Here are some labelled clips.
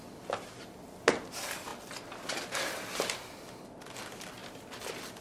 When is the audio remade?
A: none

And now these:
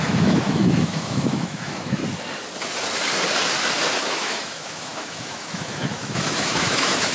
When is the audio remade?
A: 0.0-2.0 (autoencoder, DAC-VAE); 4.0-7.1

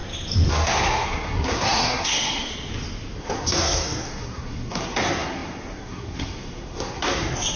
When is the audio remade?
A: 0.5-2.5 (codec, SNAC); 3.2-7.6

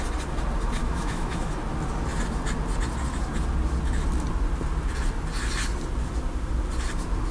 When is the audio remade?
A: 0.8-1.5 (autoencoder, DAC-VAE)

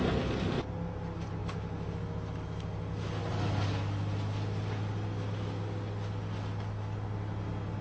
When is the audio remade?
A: none

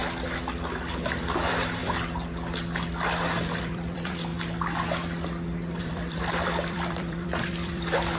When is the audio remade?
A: 0.5-1.8 (vocoder, BigVGAN v2); 3.6-4.3; 5.8-8.2